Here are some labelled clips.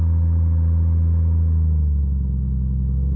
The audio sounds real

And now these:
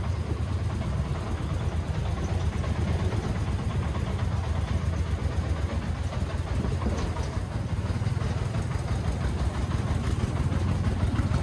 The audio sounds real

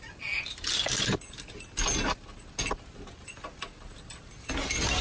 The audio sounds real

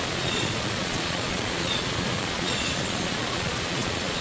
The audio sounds fake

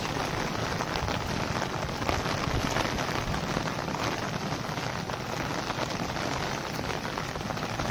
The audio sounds real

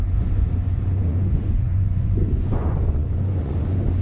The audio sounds fake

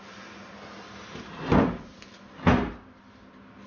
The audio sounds real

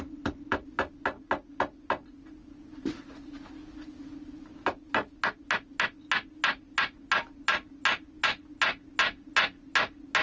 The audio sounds real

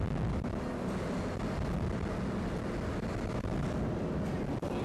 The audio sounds real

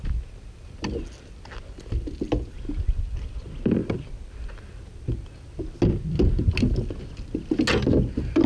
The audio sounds real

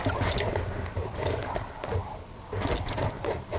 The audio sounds real